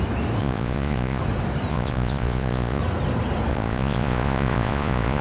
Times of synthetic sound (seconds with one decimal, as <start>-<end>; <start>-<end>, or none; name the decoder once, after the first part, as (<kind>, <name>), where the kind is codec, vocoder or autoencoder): 0.4-1.2 (vocoder, Vocos); 1.7-2.8; 3.5-5.2